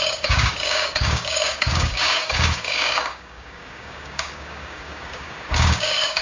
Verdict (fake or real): fake